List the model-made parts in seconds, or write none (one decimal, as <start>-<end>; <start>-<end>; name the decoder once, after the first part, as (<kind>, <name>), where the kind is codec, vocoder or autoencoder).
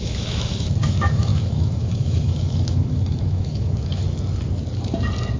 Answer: 0.0-4.0 (autoencoder, DAC-VAE)